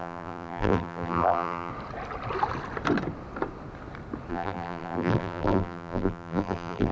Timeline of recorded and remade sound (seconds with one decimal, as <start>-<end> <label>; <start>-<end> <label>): 0.0-1.7 remade; 1.7-4.3 recorded; 4.3-6.9 remade